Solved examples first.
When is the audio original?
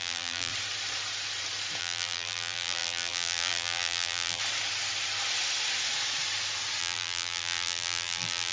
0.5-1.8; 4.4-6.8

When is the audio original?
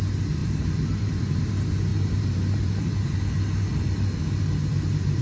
0.0-0.4; 1.4-1.9; 2.9-4.7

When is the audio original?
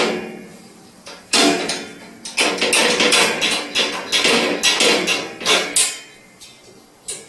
0.0-0.5; 1.7-7.3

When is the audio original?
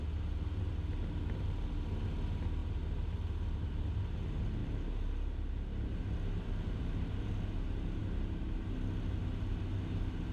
0.0-10.3